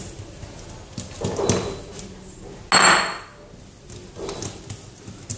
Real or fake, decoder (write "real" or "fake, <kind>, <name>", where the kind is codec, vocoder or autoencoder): real